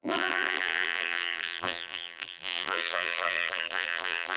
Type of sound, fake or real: fake